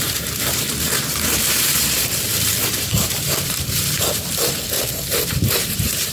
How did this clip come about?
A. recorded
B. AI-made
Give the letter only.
B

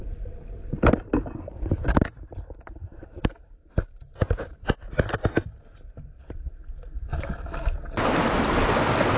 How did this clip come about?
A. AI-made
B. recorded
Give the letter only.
B